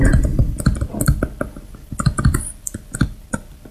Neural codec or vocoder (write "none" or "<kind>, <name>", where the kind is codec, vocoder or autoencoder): vocoder, BigVGAN v2